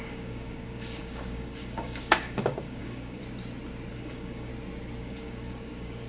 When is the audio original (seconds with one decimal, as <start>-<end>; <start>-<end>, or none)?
3.2-3.9; 4.5-5.0